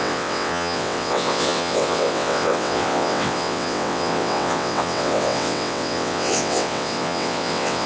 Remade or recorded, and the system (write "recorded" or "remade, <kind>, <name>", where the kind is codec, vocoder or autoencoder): remade, vocoder, WaveNeXt